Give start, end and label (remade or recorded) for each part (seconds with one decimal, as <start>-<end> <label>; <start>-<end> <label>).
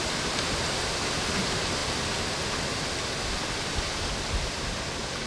0.0-5.3 recorded